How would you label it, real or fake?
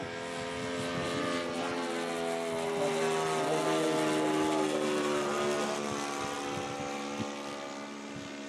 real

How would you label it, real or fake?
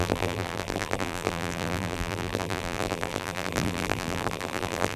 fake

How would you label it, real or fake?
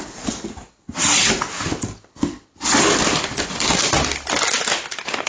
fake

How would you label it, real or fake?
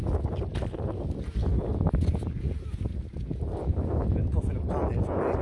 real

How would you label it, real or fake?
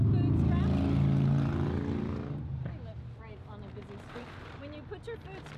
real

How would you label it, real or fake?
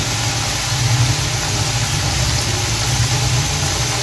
real